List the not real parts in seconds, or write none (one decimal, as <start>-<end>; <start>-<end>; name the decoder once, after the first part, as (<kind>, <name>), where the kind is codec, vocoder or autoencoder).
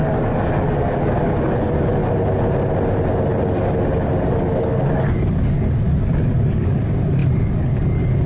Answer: 0.0-2.0 (codec, DAC); 4.2-8.3